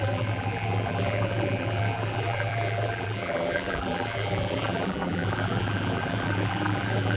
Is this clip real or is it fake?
fake